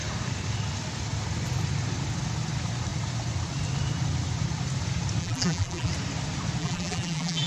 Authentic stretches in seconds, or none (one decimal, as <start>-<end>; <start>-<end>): 0.0-5.2; 5.9-6.6